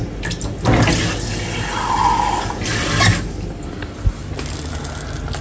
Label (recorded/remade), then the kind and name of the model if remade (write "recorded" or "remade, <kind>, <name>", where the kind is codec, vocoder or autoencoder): recorded